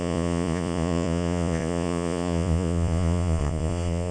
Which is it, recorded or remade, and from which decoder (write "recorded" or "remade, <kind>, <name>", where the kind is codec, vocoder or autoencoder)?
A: remade, vocoder, Vocos